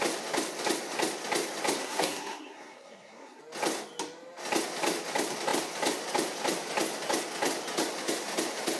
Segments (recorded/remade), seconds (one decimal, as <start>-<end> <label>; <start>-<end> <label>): 0.0-1.8 recorded; 1.8-3.4 remade; 3.4-8.8 recorded